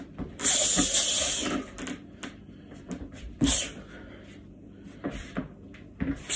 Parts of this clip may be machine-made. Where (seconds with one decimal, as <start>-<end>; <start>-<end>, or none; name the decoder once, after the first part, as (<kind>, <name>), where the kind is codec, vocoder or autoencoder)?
none